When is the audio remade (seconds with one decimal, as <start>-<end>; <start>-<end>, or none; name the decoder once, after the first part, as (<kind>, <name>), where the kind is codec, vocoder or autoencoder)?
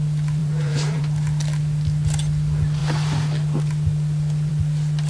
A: 0.4-1.0 (vocoder, BigVGAN v2)